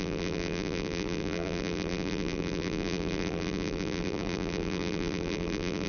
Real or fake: fake